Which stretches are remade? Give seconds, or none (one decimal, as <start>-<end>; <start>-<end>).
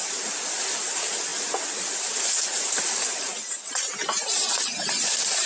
none